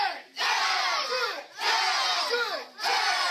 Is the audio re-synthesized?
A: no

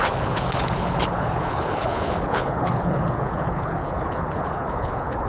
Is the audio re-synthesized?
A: yes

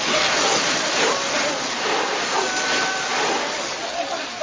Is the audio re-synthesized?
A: no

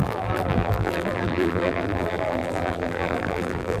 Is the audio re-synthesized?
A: yes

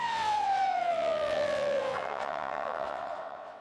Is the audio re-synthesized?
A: yes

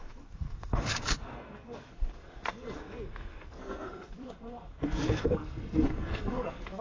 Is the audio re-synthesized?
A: yes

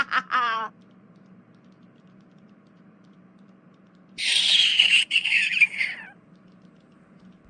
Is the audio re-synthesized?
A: yes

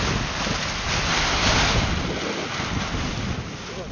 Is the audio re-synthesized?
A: no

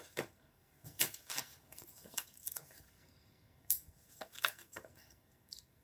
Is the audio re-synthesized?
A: yes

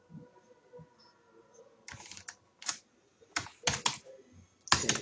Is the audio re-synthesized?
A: no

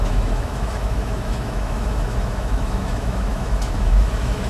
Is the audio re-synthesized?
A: yes